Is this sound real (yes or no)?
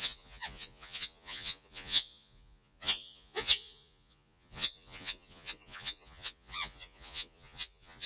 no